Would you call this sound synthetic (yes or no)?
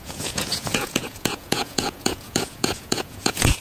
yes